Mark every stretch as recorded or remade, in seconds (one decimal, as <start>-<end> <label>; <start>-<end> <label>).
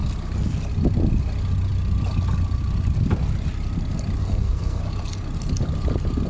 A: 0.0-4.2 recorded; 4.2-4.8 remade; 4.8-6.3 recorded